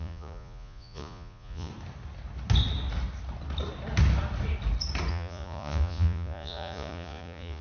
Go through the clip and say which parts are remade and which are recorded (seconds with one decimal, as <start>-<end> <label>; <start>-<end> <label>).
0.0-1.7 remade; 1.7-5.1 recorded; 5.1-7.6 remade